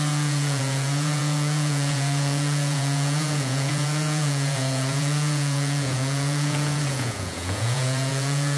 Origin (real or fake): fake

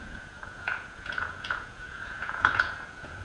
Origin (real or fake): fake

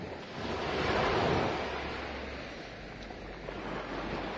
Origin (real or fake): real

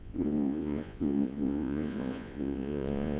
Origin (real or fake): fake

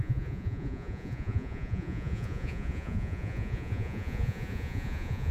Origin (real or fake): fake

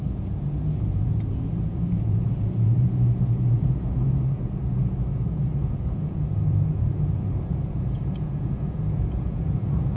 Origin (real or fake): fake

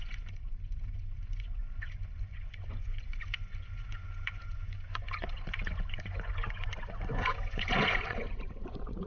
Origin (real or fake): fake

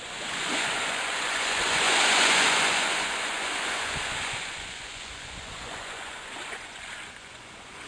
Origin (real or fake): fake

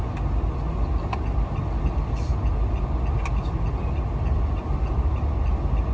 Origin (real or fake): real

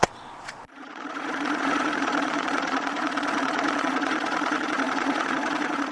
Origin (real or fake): fake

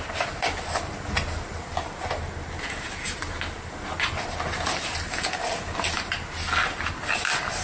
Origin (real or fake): real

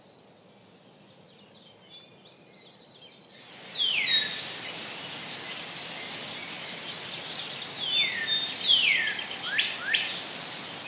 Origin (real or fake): real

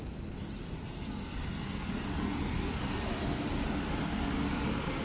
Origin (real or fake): real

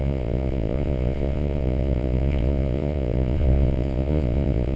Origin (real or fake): fake